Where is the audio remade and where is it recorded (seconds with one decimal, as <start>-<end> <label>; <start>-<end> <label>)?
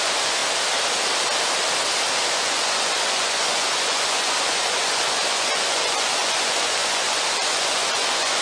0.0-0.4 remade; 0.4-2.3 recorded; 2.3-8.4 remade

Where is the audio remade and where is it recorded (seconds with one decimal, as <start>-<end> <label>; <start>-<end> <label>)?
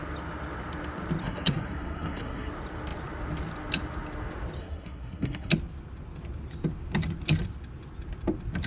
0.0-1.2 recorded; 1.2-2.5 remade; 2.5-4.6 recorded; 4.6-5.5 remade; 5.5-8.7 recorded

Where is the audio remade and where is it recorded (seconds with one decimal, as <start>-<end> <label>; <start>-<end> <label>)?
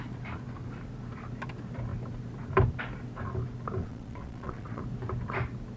0.0-3.8 recorded; 3.8-4.8 remade; 4.8-5.8 recorded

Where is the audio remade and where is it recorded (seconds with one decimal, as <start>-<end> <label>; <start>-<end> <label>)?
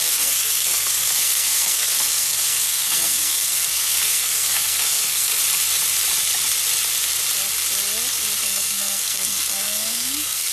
0.0-5.3 remade; 5.3-8.4 recorded; 8.4-10.5 remade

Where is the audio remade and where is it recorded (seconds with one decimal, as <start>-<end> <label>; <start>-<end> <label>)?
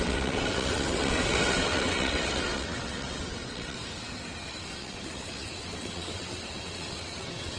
0.0-3.8 remade; 3.8-4.5 recorded; 4.5-7.6 remade